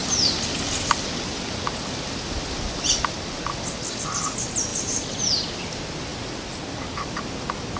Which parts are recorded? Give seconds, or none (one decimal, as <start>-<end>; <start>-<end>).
0.0-7.8